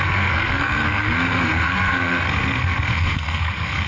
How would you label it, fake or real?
fake